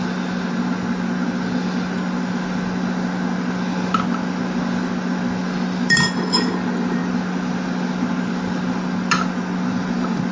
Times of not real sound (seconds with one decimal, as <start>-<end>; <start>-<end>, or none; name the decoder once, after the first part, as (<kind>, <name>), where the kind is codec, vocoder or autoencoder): none